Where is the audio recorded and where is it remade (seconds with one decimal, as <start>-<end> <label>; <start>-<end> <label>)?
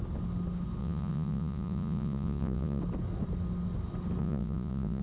0.0-0.8 recorded; 0.8-2.8 remade; 2.8-4.2 recorded; 4.2-5.0 remade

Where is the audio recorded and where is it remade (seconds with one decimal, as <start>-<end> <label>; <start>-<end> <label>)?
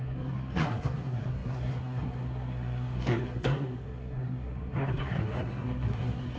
0.0-6.4 remade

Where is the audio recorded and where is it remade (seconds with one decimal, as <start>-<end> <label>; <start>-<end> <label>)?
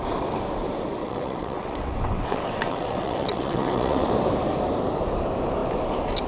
0.0-1.0 recorded; 1.0-4.1 remade; 4.1-6.3 recorded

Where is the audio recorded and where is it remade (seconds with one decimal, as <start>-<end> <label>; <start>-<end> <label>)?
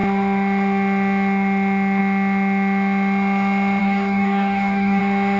0.0-3.8 recorded; 3.8-5.0 remade; 5.0-5.4 recorded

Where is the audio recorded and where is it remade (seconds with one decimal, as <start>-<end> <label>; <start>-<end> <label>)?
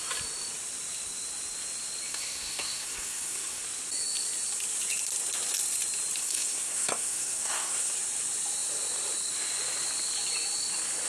0.0-2.1 recorded; 2.1-3.6 remade; 3.6-6.2 recorded; 6.2-7.9 remade; 7.9-11.1 recorded